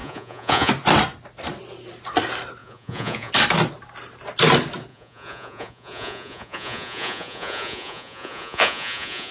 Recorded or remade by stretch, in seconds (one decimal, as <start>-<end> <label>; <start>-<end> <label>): 0.0-0.7 remade; 0.7-2.6 recorded; 2.6-3.3 remade; 3.3-4.9 recorded; 4.9-9.3 remade